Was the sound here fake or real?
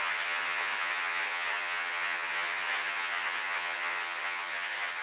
fake